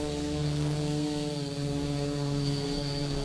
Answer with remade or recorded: remade